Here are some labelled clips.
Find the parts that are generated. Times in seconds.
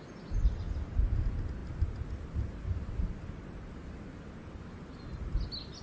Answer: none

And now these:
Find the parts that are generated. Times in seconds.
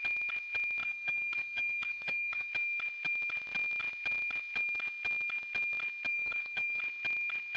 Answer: 0.8-2.5 (codec, DAC); 6.1-6.8